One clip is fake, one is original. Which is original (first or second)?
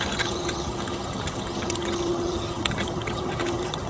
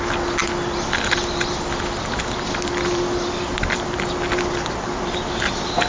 second